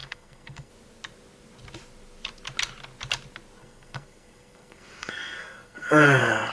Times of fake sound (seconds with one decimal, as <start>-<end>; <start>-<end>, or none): 0.0-0.7; 3.6-6.5